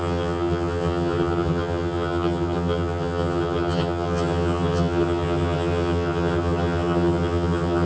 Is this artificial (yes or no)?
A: yes